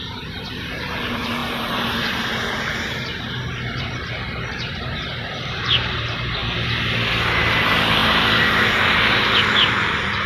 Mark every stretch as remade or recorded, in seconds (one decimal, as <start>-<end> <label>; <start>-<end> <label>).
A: 0.0-6.4 remade; 6.4-7.6 recorded; 7.6-10.3 remade